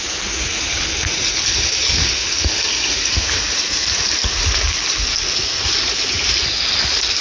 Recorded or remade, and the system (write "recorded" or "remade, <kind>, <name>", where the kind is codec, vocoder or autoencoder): recorded